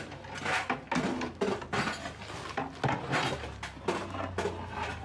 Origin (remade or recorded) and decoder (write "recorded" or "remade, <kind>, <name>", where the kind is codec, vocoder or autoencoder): recorded